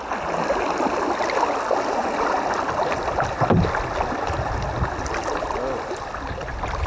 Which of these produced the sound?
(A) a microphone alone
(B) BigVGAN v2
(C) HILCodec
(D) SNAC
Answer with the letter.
A